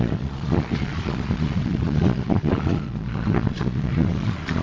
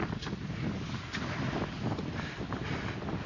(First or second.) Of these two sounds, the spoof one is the first